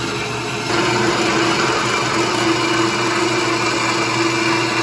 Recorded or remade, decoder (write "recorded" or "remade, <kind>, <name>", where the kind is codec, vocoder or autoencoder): recorded